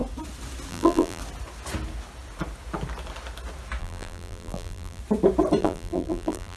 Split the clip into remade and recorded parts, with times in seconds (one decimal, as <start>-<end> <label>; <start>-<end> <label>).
0.0-0.7 recorded; 0.7-1.2 remade; 1.2-3.8 recorded; 3.8-5.0 remade; 5.0-5.6 recorded; 5.6-6.6 remade